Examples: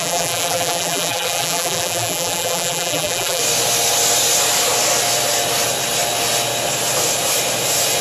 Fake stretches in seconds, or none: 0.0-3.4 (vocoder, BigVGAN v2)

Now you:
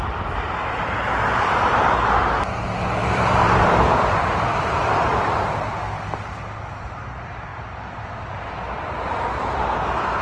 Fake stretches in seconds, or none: 3.0-4.7 (vocoder, BigVGAN v2)

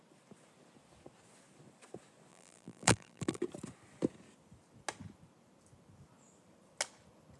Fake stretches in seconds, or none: 2.3-3.4 (vocoder, BigVGAN v2)